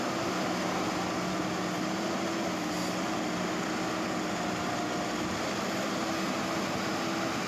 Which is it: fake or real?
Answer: real